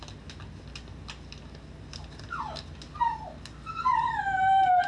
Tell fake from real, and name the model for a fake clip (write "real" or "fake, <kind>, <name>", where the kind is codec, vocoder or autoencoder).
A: real